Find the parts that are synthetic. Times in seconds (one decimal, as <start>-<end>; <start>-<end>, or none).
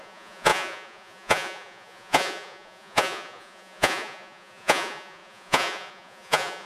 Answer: 0.0-6.7